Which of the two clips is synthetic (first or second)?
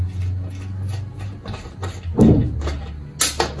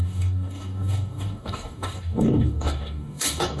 second